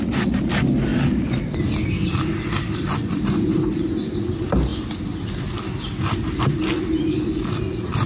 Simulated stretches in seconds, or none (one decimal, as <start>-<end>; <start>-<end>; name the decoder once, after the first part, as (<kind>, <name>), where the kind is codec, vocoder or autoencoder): none